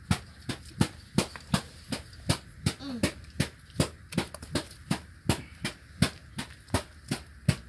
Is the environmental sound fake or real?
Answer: real